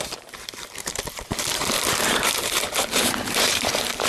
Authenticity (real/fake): fake